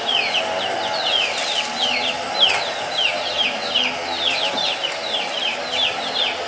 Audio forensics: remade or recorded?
recorded